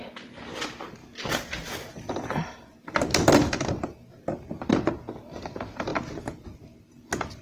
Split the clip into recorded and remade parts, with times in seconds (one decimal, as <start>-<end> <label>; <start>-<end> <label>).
0.0-2.7 recorded; 2.7-4.7 remade; 4.7-5.9 recorded; 5.9-6.9 remade; 6.9-7.4 recorded